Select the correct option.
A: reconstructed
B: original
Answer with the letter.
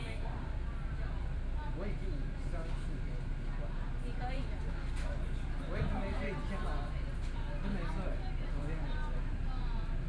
B